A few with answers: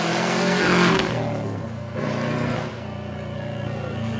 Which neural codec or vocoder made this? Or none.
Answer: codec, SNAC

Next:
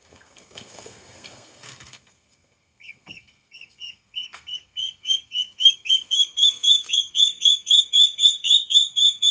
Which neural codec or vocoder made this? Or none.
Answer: codec, SNAC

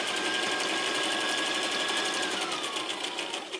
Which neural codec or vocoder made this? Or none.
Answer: none